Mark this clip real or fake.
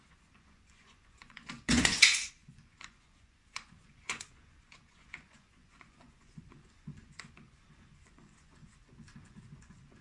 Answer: fake